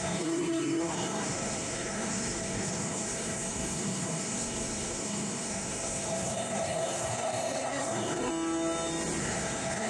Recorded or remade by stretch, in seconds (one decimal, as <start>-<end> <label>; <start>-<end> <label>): 0.0-8.3 remade; 8.3-9.2 recorded; 9.2-9.9 remade